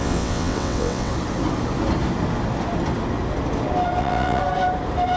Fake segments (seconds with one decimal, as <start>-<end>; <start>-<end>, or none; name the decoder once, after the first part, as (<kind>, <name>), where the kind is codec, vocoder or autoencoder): 0.0-1.1 (vocoder, WaveNeXt); 4.0-4.4

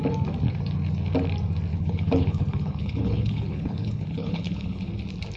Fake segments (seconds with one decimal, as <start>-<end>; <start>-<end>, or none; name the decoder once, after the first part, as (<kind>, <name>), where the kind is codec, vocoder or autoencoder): 1.7-4.9 (codec, HILCodec)

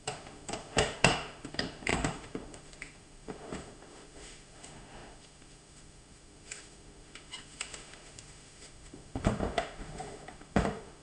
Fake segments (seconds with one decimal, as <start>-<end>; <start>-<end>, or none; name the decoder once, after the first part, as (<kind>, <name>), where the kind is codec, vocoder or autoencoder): 0.0-11.0 (autoencoder, DAC-VAE)

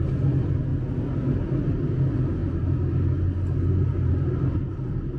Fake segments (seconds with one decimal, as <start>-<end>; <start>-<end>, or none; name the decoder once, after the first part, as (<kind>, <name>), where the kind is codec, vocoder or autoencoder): none